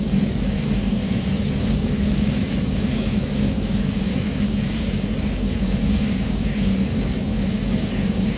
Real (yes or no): no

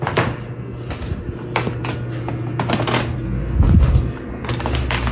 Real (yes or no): yes